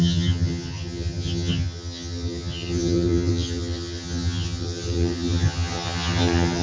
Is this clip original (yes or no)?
no